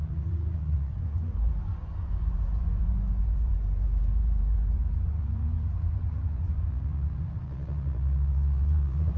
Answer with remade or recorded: remade